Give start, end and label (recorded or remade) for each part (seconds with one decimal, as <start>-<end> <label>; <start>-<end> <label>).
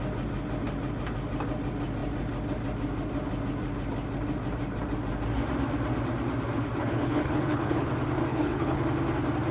0.0-6.8 recorded; 6.8-7.9 remade; 7.9-8.3 recorded; 8.3-8.8 remade; 8.8-9.5 recorded